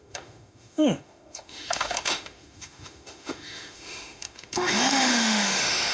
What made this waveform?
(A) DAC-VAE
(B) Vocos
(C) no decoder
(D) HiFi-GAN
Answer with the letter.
A